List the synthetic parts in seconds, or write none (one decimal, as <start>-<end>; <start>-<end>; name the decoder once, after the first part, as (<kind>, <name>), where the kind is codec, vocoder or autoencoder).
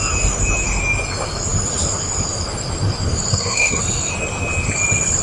3.3-3.8 (codec, SNAC)